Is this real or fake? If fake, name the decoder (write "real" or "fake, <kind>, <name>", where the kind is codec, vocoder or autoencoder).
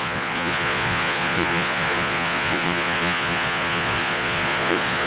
fake, vocoder, Vocos